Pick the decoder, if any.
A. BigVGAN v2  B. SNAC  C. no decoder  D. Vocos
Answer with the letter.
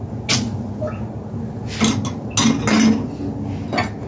C